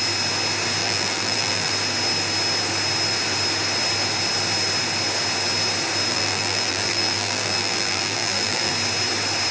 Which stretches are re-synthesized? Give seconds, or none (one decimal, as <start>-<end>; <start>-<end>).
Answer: 0.8-1.7; 6.1-8.7